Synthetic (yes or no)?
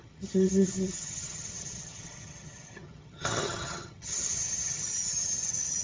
yes